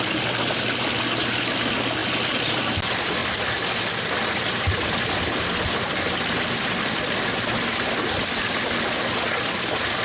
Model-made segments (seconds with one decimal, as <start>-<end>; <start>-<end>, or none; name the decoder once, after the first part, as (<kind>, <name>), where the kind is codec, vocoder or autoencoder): none